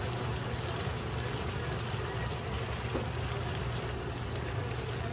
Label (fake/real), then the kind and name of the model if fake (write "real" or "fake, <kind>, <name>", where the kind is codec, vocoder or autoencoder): real